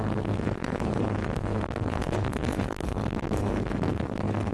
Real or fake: fake